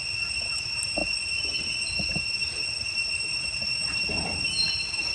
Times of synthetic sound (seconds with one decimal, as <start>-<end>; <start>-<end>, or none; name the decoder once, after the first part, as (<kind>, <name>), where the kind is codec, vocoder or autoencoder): none